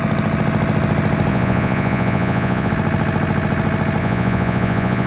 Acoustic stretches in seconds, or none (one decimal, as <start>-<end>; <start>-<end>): 0.0-1.3; 2.7-4.0